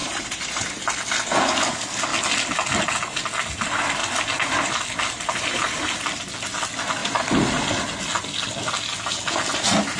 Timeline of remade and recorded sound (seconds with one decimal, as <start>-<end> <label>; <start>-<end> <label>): 0.0-1.0 remade; 1.0-10.0 recorded